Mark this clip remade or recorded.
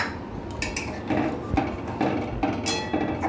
recorded